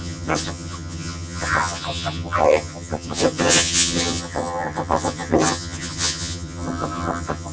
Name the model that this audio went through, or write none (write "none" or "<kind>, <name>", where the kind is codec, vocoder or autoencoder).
vocoder, HiFi-GAN